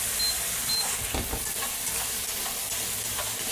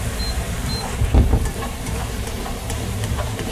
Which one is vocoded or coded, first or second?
second